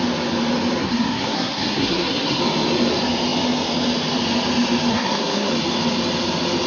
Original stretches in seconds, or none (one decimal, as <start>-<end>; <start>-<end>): 0.0-0.8; 2.4-4.9; 5.5-6.7